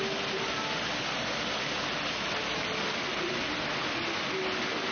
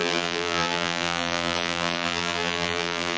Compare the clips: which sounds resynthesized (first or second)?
second